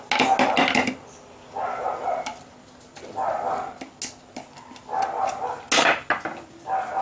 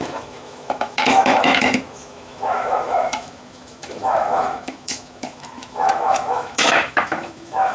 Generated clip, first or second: second